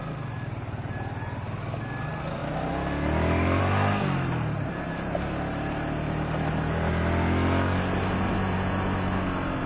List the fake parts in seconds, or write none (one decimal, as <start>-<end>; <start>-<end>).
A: none